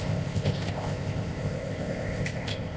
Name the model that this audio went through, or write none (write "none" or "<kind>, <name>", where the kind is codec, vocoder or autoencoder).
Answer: codec, ZipCodec